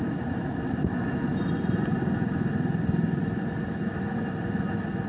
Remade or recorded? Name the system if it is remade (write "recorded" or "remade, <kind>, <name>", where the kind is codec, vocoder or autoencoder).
recorded